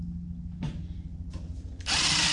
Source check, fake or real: real